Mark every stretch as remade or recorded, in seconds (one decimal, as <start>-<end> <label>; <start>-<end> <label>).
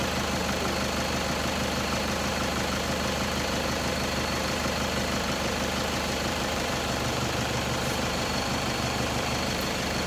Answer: 0.0-0.4 remade; 0.4-1.3 recorded; 1.3-10.1 remade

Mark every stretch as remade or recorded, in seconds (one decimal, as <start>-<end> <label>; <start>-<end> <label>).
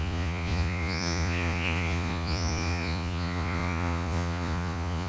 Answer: 0.0-5.1 remade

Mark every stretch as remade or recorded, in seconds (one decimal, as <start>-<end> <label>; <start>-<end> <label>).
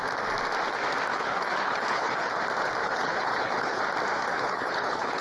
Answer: 0.0-1.1 recorded; 1.1-2.3 remade; 2.3-2.8 recorded; 2.8-3.8 remade; 3.8-4.3 recorded; 4.3-5.2 remade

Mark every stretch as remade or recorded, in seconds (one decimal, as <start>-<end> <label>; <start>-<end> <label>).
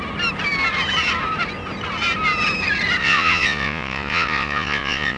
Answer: 0.0-3.0 recorded; 3.0-5.2 remade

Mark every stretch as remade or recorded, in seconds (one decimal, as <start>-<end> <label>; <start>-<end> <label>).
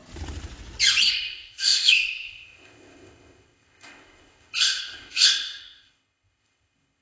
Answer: 0.0-1.1 recorded; 1.1-7.0 remade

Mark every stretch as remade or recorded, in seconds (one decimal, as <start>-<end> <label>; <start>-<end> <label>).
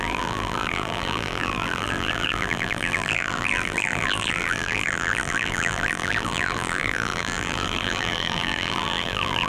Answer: 0.0-9.5 remade